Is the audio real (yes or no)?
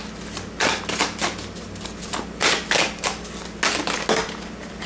yes